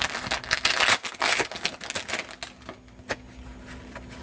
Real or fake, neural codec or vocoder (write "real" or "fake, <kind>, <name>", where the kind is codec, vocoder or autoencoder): real